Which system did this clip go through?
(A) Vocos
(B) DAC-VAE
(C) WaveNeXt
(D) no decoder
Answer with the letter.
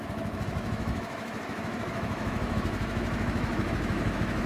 B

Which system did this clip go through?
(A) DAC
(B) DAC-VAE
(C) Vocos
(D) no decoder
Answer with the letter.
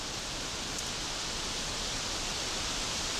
D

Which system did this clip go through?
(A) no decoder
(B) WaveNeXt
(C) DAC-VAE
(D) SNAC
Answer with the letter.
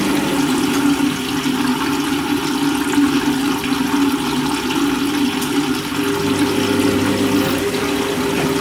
A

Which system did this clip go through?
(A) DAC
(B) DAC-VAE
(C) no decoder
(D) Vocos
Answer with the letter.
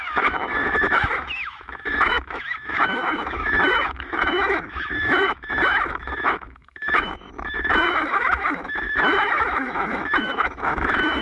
B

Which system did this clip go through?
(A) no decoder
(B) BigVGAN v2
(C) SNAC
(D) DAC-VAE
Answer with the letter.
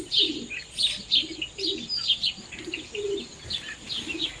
A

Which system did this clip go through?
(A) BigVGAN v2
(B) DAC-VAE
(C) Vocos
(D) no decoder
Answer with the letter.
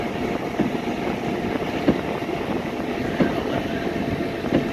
D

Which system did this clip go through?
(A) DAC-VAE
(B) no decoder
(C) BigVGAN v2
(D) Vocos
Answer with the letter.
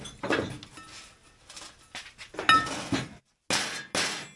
B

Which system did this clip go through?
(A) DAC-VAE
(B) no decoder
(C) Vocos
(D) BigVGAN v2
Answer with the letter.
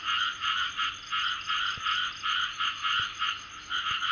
B